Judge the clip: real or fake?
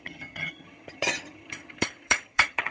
fake